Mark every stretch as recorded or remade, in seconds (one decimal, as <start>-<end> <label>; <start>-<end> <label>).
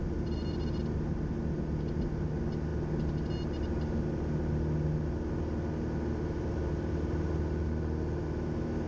0.0-8.9 recorded